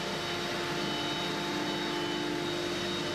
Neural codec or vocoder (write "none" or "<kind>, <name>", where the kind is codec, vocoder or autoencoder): none